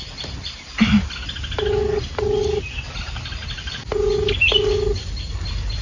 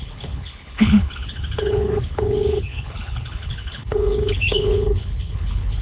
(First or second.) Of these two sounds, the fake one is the second